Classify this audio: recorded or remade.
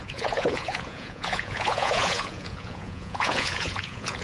remade